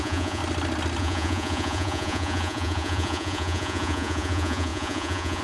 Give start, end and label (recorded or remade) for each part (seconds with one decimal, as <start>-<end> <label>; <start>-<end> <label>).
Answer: 0.0-0.4 remade; 0.4-1.0 recorded; 1.0-5.4 remade